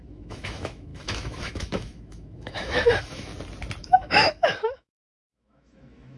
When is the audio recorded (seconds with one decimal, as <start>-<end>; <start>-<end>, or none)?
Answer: 3.3-3.8